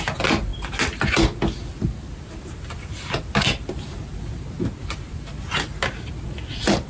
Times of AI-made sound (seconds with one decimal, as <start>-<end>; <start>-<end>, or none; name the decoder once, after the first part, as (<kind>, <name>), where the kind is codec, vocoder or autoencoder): none